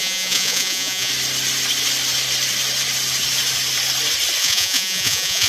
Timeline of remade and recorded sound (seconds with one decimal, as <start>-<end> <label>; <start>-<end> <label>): 0.0-1.1 remade; 1.1-4.4 recorded; 4.4-5.5 remade